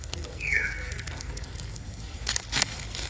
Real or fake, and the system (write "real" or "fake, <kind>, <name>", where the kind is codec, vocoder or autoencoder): fake, codec, SNAC